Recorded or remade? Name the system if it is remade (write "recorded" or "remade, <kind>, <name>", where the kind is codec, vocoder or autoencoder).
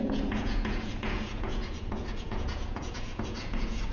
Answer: remade, vocoder, Vocos